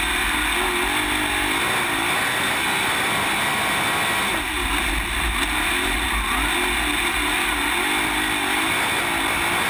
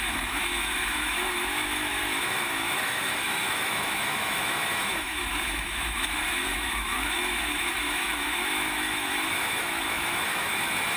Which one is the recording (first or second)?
first